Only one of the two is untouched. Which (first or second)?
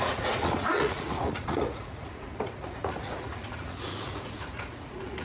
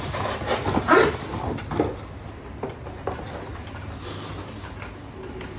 second